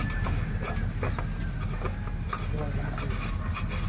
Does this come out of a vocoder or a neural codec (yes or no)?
no